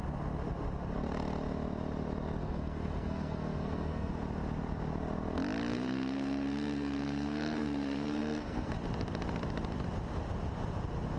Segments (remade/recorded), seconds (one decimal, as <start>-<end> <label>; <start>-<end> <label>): 0.0-2.4 recorded; 2.4-4.1 remade; 4.1-5.7 recorded; 5.7-8.7 remade; 8.7-11.2 recorded